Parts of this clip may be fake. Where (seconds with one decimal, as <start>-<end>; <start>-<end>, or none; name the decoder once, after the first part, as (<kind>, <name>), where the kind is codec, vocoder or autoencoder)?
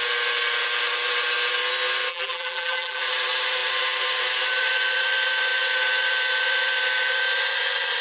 2.1-3.0 (vocoder, BigVGAN v2)